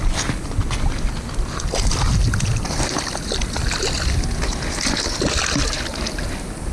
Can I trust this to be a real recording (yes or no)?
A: yes